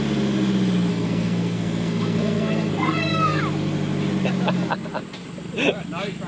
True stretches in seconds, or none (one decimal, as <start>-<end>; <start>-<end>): 0.0-0.9; 3.4-6.3